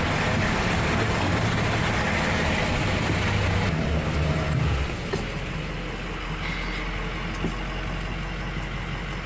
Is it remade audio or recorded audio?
recorded